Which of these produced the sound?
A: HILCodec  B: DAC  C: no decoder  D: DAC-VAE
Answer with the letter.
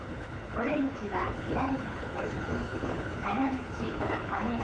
A